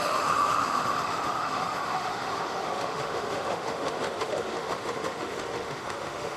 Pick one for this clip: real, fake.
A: fake